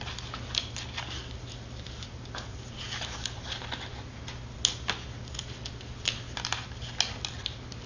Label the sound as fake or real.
real